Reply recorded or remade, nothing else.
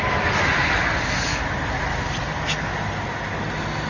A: recorded